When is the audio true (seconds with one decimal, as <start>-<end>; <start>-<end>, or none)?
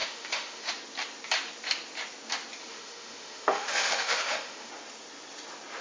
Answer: 0.7-2.6; 4.7-5.8